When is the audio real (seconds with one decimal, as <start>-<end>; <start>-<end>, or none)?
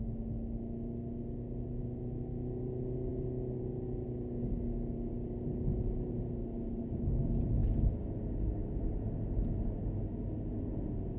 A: 0.0-11.2